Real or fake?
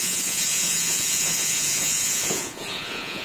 fake